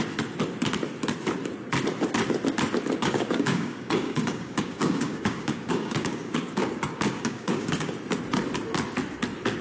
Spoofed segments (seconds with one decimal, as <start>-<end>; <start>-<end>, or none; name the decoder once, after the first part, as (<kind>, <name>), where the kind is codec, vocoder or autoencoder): 3.0-7.9 (codec, DAC)